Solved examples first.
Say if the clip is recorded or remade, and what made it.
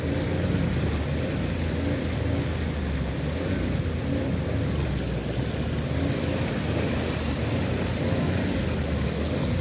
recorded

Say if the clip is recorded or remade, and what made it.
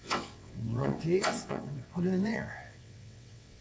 remade, vocoder, WaveNeXt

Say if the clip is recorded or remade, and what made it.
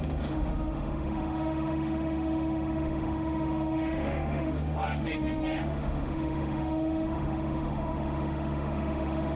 remade, autoencoder, DAC-VAE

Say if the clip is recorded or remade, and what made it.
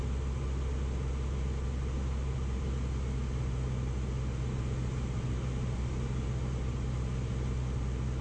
recorded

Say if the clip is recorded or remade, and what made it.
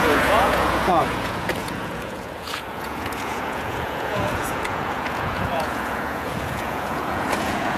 remade, vocoder, Vocos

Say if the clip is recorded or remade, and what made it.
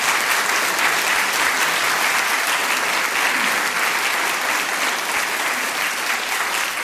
recorded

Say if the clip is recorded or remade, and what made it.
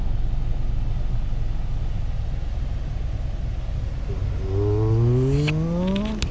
recorded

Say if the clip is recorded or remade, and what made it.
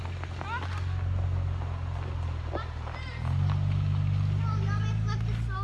recorded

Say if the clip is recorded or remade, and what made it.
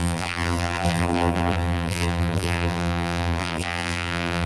remade, vocoder, BigVGAN v2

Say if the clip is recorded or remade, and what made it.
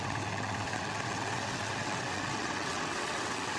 remade, vocoder, WaveNeXt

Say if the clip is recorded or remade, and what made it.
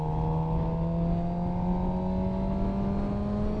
recorded